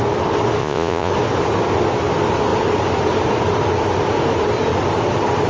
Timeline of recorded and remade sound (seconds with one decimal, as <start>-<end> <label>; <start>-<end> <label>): 0.0-0.6 recorded; 0.6-1.1 remade; 1.1-5.5 recorded